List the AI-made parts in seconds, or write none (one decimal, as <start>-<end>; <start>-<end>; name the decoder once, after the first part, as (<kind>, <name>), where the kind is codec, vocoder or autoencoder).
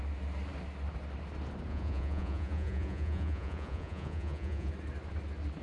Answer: 1.7-4.7 (vocoder, Vocos)